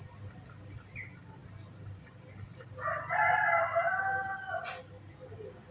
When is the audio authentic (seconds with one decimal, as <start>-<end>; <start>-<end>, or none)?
0.0-5.7